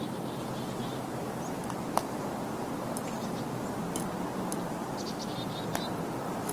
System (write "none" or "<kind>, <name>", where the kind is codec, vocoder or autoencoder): none